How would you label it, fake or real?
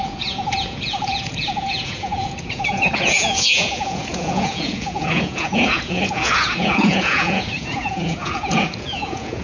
fake